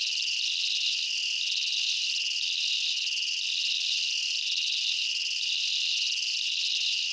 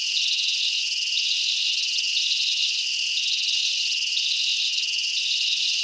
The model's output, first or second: second